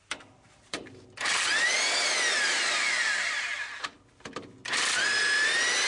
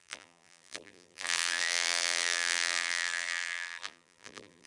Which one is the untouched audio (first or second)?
first